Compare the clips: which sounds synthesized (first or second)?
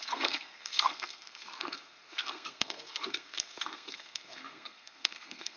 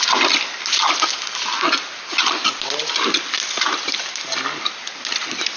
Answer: first